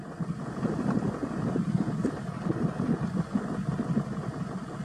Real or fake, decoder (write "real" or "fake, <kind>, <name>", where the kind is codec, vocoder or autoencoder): real